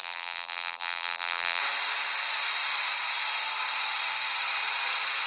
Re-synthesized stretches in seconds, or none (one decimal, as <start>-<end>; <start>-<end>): 0.0-1.6